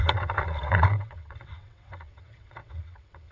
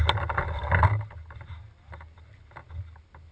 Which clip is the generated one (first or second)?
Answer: first